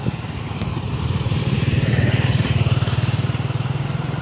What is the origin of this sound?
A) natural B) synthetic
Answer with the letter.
B